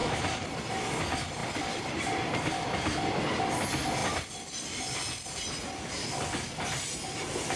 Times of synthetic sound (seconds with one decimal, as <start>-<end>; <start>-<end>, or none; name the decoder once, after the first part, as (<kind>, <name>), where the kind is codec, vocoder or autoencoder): 0.0-1.0 (vocoder, BigVGAN v2); 1.4-3.2; 4.0-5.5